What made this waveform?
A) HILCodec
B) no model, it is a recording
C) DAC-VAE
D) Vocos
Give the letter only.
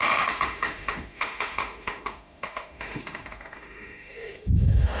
C